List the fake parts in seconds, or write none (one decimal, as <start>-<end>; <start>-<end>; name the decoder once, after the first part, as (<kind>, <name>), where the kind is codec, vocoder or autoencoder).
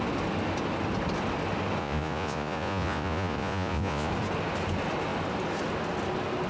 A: 1.8-4.1 (vocoder, Vocos)